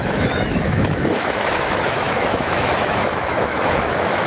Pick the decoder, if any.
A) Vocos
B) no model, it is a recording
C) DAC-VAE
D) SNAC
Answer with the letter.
C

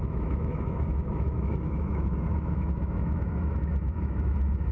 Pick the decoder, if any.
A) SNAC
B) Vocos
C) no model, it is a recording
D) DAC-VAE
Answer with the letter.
D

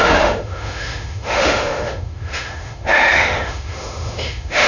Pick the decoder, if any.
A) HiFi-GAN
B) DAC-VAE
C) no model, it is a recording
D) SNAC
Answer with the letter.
B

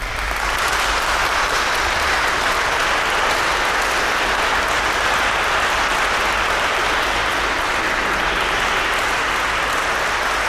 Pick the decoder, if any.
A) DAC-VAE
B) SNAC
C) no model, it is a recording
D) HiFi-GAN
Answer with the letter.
C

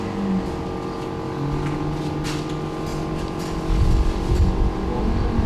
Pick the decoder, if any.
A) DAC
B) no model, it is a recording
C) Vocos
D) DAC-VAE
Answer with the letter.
B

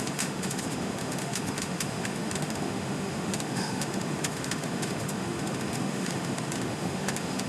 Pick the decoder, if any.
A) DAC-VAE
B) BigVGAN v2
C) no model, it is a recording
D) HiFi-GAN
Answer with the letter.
A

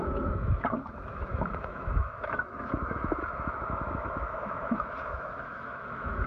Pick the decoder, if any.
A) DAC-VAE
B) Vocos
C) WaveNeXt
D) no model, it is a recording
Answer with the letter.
A